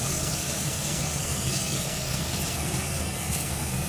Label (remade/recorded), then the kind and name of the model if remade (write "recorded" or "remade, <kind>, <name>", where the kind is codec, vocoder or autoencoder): remade, codec, SNAC